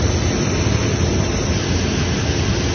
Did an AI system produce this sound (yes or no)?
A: no